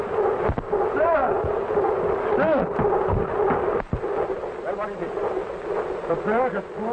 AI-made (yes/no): no